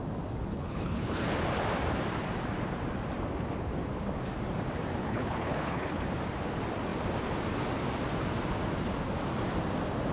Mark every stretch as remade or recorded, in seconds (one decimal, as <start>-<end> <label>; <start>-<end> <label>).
0.0-0.5 recorded; 0.5-1.2 remade; 1.2-5.0 recorded; 5.0-6.0 remade; 6.0-10.1 recorded